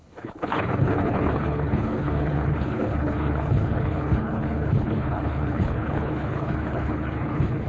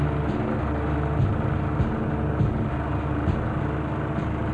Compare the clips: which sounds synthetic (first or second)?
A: first